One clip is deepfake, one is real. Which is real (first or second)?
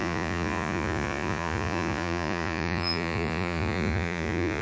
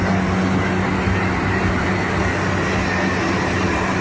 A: second